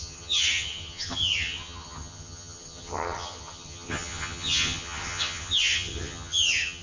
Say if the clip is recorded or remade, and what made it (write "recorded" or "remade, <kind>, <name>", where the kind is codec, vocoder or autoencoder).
remade, vocoder, HiFi-GAN